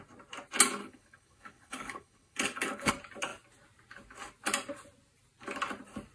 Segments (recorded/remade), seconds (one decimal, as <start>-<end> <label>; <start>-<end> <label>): 0.0-0.8 recorded; 0.8-2.9 remade; 2.9-6.1 recorded